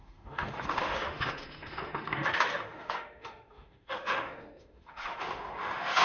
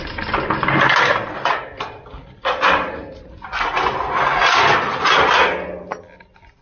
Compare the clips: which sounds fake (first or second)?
first